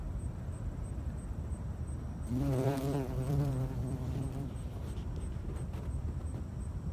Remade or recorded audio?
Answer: remade